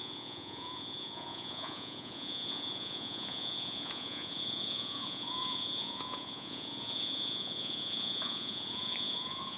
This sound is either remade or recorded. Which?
remade